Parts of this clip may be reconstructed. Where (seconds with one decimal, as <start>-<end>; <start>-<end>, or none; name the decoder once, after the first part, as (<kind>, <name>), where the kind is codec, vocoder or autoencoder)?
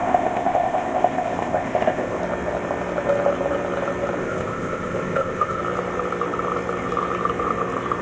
0.0-2.2 (codec, ZipCodec); 4.2-5.6